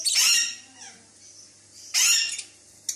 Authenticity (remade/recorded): recorded